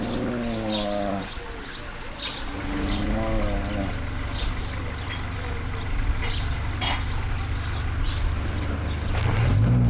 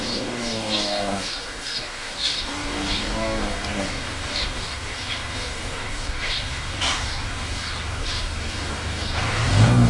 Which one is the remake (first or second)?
second